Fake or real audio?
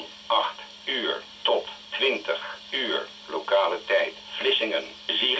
real